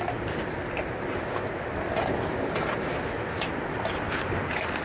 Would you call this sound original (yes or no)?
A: yes